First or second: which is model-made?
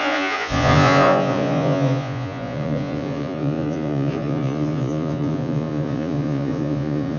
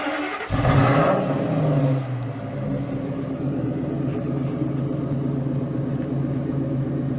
first